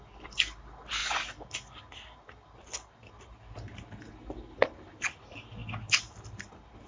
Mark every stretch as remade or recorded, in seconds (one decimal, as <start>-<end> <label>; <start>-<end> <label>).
0.0-6.9 recorded